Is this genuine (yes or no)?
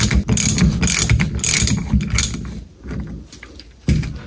yes